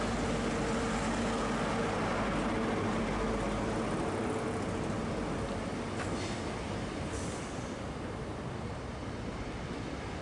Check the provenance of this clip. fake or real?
real